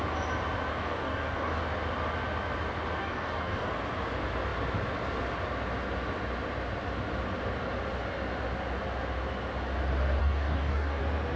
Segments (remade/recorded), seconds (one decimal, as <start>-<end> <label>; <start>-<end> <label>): 0.0-0.7 recorded; 0.7-1.6 remade; 1.6-3.0 recorded; 3.0-3.7 remade; 3.7-10.2 recorded; 10.2-11.0 remade; 11.0-11.4 recorded